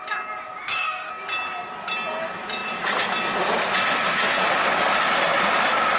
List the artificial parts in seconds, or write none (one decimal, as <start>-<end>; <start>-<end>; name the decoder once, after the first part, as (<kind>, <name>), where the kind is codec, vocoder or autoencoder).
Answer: 0.6-1.1 (codec, DAC)